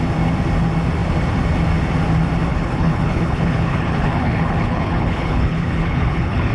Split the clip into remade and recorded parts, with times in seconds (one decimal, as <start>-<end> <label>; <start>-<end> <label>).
0.0-2.5 recorded; 2.5-6.5 remade